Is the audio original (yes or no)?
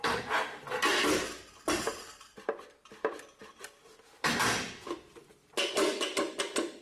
yes